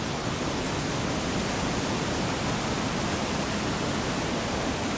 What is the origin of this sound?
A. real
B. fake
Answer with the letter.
A